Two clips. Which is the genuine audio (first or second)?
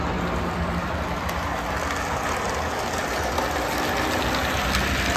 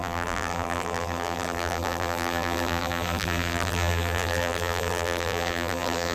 first